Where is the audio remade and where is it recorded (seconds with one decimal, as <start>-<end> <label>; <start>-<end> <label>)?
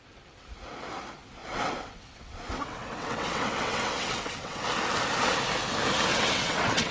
0.0-1.4 recorded; 1.4-4.7 remade; 4.7-6.1 recorded; 6.1-6.9 remade